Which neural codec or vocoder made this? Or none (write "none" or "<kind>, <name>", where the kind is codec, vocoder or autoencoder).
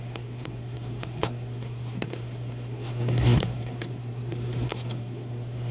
codec, SNAC